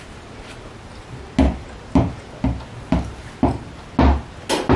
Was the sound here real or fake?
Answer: real